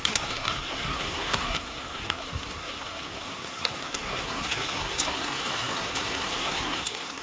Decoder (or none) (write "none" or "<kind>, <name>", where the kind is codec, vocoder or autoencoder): codec, SNAC